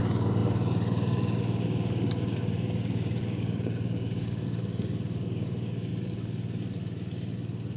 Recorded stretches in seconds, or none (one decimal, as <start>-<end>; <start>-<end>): 5.9-7.8